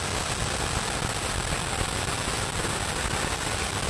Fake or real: real